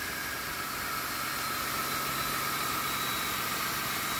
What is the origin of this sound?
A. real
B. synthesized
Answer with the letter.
A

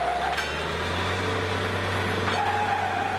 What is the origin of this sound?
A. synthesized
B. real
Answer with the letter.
B